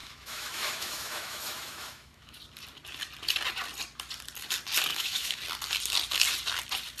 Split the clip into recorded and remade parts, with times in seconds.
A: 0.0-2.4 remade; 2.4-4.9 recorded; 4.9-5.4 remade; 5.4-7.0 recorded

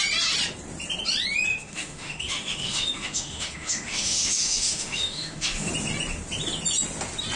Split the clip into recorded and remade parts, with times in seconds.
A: 0.0-1.5 recorded; 1.5-5.7 remade; 5.7-7.4 recorded

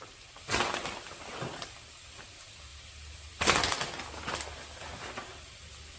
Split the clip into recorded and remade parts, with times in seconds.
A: 0.0-6.0 recorded